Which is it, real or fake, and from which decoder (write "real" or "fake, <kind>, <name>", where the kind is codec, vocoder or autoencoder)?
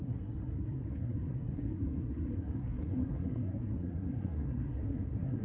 fake, codec, SNAC